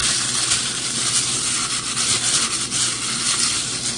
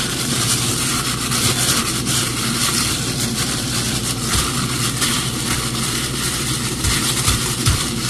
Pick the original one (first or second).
first